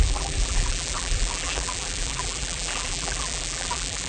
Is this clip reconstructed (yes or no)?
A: yes